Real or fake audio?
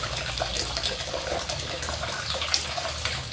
fake